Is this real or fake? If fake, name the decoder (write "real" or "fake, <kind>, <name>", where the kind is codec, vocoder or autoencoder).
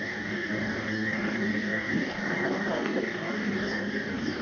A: fake, codec, DAC